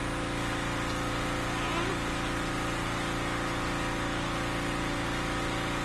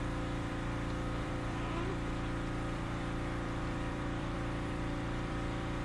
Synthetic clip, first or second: second